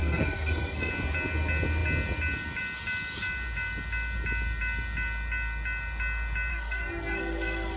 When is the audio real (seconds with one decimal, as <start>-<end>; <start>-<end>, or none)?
0.9-6.5